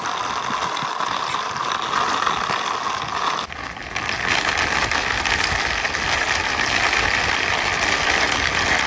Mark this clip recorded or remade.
recorded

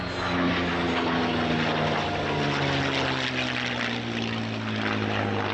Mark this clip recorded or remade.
recorded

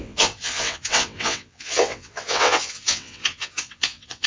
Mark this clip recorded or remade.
remade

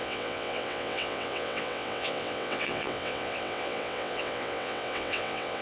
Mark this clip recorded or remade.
remade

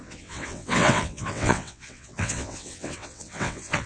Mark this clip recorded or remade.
remade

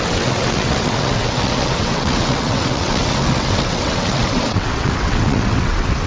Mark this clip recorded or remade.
remade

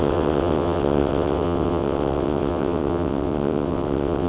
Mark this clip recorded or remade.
remade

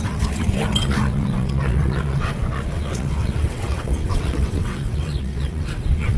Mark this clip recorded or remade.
remade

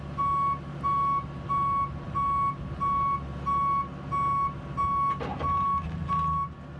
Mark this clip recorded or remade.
recorded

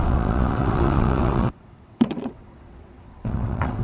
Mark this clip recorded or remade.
remade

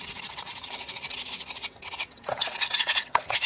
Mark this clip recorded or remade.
remade